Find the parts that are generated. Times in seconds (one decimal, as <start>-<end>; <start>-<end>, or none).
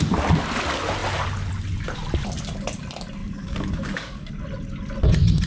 3.2-4.3